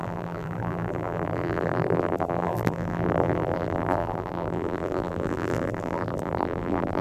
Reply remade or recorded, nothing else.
remade